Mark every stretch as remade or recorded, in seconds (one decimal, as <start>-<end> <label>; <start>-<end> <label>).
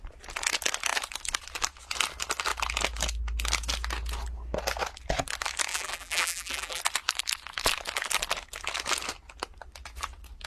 0.0-5.7 recorded; 5.7-6.8 remade; 6.8-10.5 recorded